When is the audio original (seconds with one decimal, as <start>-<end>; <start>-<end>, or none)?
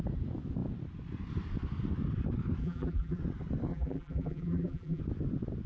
0.0-2.6; 3.2-3.7; 5.0-5.7